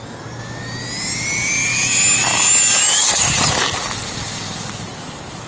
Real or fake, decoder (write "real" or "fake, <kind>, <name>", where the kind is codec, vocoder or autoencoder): real